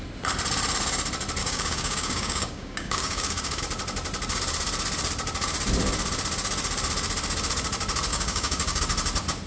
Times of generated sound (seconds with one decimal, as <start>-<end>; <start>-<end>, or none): 1.4-3.6; 8.1-8.8